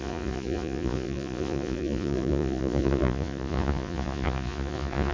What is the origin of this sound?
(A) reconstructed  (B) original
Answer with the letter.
A